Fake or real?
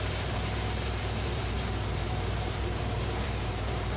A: fake